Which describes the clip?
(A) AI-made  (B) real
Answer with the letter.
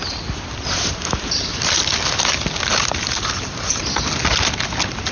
B